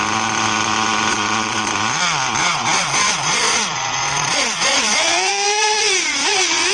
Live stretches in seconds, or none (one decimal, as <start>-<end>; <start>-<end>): 0.0-1.1; 1.7-2.4